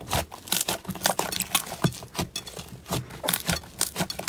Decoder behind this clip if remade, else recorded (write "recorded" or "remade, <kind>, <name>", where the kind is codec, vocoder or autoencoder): recorded